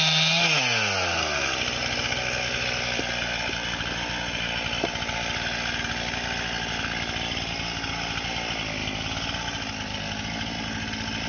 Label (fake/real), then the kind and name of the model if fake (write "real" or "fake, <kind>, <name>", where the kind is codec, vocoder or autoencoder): real